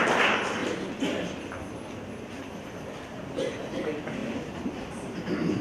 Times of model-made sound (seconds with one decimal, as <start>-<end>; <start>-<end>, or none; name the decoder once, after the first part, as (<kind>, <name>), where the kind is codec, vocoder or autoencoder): 0.0-0.6 (vocoder, BigVGAN v2); 3.5-5.6